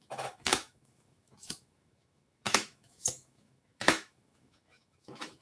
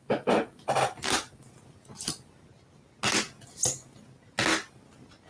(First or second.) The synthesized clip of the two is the first